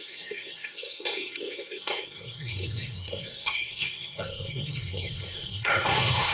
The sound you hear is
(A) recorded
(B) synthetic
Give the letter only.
B